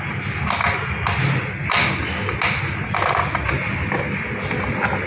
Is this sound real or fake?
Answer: real